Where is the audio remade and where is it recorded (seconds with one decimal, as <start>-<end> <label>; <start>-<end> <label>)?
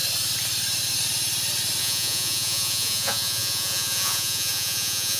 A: 0.0-1.8 recorded; 1.8-5.2 remade